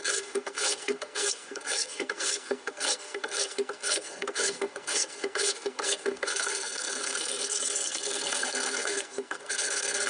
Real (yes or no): no